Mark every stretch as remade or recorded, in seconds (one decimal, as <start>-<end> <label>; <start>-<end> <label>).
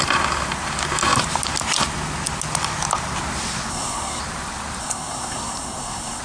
0.0-3.7 recorded; 3.7-4.2 remade; 4.2-4.8 recorded; 4.8-6.2 remade